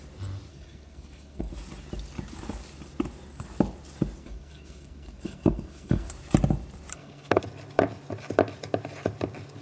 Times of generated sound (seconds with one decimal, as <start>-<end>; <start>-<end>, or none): 0.5-1.5; 4.2-6.1; 6.9-7.4